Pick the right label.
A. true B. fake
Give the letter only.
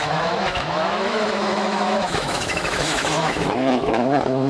B